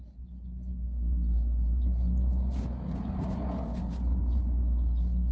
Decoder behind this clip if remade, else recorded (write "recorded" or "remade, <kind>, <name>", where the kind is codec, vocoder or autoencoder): recorded